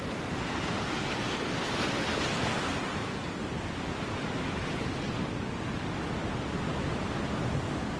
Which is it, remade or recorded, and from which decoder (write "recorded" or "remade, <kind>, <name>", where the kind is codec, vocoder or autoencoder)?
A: recorded